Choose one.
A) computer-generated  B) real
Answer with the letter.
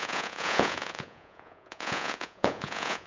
A